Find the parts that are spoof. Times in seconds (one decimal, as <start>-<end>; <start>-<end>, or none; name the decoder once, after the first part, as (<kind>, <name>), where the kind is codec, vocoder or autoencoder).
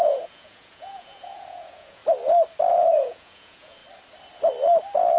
0.0-2.0 (vocoder, Vocos); 2.7-3.8